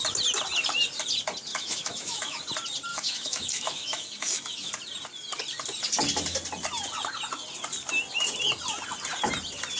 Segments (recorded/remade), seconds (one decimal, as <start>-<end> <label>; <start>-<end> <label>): 0.0-1.5 recorded; 1.5-2.4 remade; 2.4-2.9 recorded; 2.9-4.7 remade; 4.7-9.8 recorded